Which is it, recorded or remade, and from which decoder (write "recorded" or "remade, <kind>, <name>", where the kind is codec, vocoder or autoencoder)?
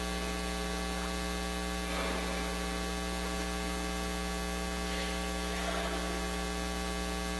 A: recorded